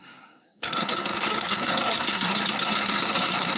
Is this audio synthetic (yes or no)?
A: yes